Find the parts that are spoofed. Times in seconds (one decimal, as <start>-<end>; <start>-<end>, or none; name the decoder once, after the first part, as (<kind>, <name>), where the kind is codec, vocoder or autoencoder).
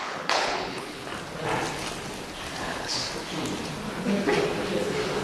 0.0-1.1 (codec, HILCodec); 2.6-3.0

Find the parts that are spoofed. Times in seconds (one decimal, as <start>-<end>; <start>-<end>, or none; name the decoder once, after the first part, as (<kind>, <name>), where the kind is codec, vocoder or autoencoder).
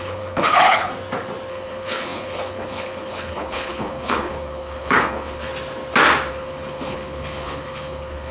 0.0-0.9 (codec, HILCodec); 1.5-5.5; 6.3-8.3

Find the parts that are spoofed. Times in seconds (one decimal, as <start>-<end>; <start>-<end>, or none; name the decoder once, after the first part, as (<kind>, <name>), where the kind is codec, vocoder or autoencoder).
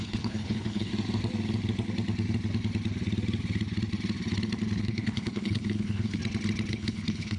0.0-0.9 (codec, HILCodec); 4.8-6.2; 6.7-7.4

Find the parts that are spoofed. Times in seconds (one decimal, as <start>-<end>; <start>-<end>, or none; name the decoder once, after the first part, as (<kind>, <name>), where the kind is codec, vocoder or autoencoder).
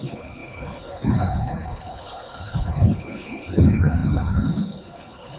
0.0-5.4 (codec, HILCodec)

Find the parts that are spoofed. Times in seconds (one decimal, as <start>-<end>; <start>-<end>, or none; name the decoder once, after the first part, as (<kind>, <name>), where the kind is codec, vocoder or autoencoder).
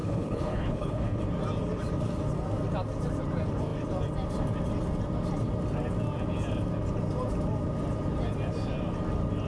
0.0-1.2 (codec, HILCodec)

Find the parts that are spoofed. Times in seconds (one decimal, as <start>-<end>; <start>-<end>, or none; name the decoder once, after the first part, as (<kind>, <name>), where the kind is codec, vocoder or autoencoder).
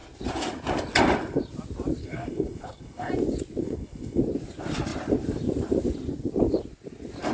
2.0-3.1 (codec, HILCodec); 3.6-4.2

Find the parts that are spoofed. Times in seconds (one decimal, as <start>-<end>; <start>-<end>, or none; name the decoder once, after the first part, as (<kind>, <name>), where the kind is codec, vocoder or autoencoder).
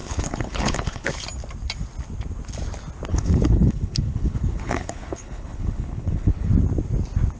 0.0-1.1 (codec, HILCodec); 3.1-6.5